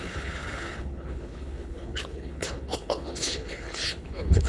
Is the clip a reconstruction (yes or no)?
yes